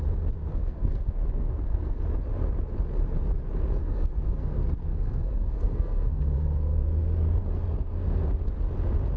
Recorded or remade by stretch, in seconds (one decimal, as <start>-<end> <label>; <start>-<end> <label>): 0.0-0.4 recorded; 0.4-2.0 remade; 2.0-3.8 recorded; 3.8-8.3 remade; 8.3-9.2 recorded